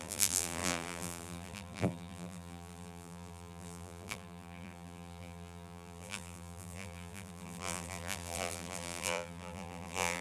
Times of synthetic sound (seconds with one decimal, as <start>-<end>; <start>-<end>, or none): 0.0-10.2